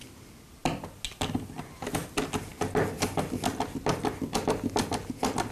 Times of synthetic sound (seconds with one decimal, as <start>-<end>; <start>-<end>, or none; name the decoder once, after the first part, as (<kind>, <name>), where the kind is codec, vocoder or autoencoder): none

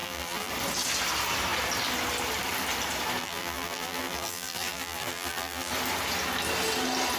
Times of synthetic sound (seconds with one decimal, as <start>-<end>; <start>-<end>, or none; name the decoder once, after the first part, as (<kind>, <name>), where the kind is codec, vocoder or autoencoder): 0.0-0.5 (vocoder, BigVGAN v2); 3.2-5.7

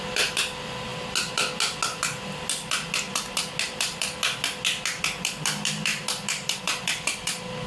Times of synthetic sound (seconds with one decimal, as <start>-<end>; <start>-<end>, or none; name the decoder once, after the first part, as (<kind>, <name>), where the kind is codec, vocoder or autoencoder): 0.0-0.9 (vocoder, BigVGAN v2); 5.0-7.7